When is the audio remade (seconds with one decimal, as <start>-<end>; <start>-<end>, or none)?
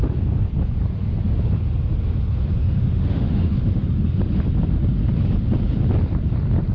2.6-3.8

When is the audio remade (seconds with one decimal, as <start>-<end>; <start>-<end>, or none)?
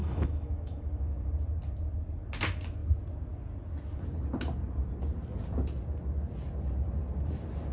0.0-1.3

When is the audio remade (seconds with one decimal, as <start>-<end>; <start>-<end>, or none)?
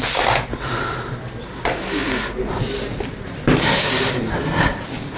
none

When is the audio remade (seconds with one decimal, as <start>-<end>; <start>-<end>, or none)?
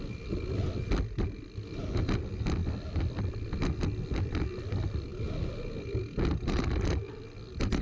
none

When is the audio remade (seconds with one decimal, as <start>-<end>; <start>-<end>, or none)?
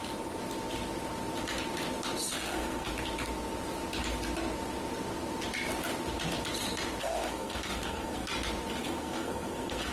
2.3-2.9; 7.0-8.3; 8.8-9.9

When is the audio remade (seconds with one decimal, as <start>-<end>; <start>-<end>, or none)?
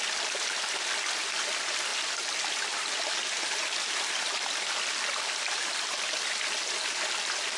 none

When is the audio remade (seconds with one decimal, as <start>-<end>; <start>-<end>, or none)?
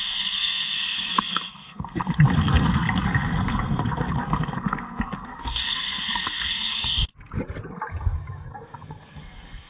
0.0-7.1; 8.5-9.7